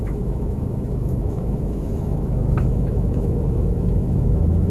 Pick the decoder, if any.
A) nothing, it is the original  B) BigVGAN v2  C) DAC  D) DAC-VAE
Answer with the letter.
D